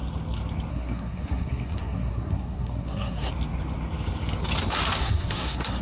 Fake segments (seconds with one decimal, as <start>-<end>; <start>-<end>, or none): 0.7-3.3; 5.0-5.8